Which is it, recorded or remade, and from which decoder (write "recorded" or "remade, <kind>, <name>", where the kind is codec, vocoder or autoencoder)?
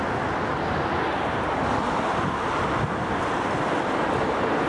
recorded